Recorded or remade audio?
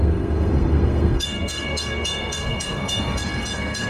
remade